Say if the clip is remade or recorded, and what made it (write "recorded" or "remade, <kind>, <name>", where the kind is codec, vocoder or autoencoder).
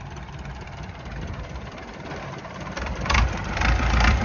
remade, vocoder, BigVGAN v2